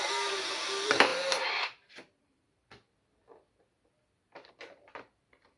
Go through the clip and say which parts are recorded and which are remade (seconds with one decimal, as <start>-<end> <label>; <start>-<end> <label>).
0.0-1.1 remade; 1.1-4.5 recorded; 4.5-5.6 remade